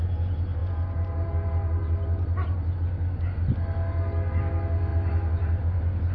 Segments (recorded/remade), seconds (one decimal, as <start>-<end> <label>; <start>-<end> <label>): 0.0-6.1 recorded